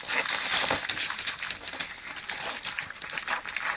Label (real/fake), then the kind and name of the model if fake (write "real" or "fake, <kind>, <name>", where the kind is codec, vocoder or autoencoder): real